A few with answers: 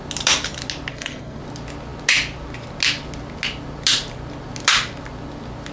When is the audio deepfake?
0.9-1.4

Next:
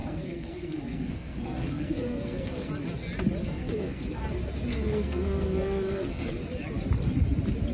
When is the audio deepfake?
0.0-2.7; 3.4-4.2; 4.7-6.3